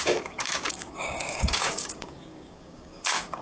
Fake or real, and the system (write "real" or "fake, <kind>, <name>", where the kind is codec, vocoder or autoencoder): fake, codec, DAC